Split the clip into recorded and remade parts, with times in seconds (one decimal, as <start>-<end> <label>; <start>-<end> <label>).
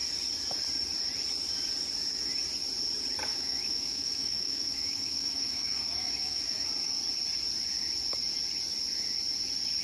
0.0-3.3 recorded; 3.3-6.7 remade; 6.7-9.8 recorded